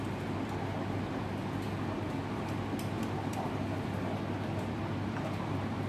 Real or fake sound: real